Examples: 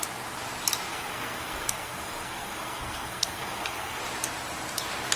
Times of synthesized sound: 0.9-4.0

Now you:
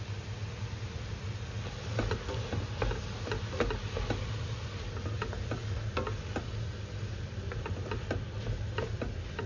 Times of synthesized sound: none

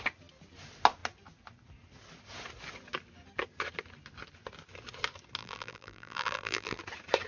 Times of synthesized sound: 5.4-6.8